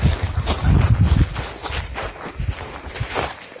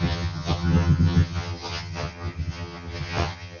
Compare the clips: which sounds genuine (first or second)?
first